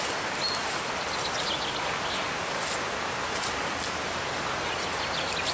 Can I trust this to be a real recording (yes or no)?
yes